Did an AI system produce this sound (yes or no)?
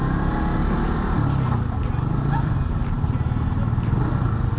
no